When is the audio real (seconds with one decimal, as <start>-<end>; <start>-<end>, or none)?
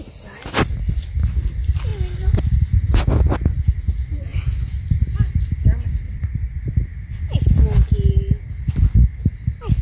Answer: 0.0-9.8